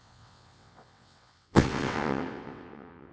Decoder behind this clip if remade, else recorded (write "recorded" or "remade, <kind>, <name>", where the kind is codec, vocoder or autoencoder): remade, vocoder, WaveNeXt